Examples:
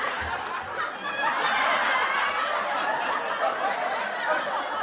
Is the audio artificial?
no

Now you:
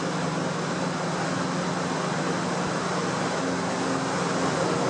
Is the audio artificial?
no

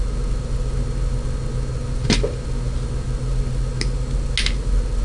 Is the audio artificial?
no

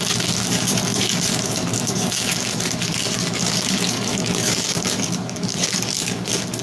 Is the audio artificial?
yes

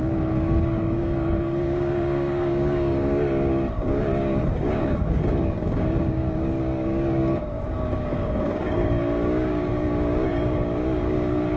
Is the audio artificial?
yes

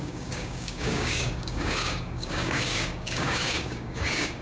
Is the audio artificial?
yes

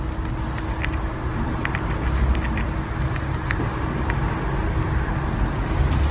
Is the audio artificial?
no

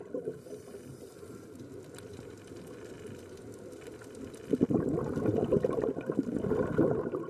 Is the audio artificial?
no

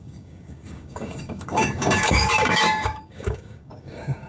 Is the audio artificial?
yes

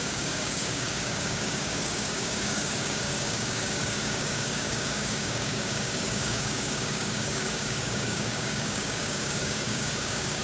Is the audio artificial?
yes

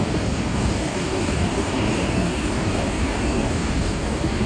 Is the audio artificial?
yes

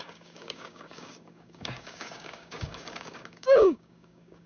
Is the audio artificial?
yes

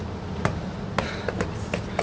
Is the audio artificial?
no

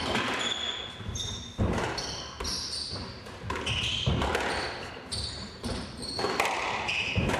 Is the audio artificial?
no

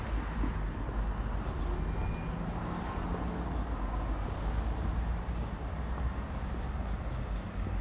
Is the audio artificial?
no